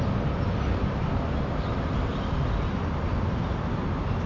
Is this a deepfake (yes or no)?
no